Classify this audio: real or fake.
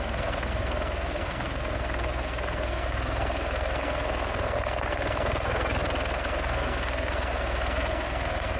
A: fake